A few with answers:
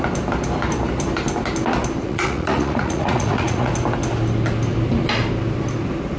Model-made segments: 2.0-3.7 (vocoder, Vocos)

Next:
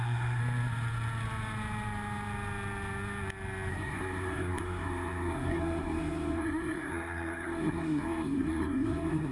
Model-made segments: 0.0-0.4 (codec, SNAC); 3.7-9.3